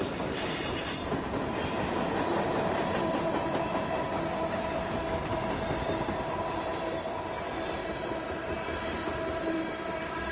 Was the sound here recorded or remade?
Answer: recorded